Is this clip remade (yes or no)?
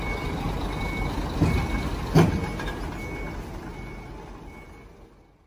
no